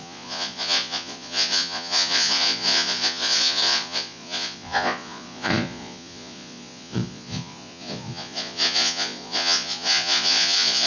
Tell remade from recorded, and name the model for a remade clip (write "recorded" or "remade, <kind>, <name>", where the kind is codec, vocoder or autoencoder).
remade, vocoder, Vocos